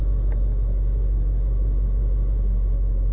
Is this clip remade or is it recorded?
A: recorded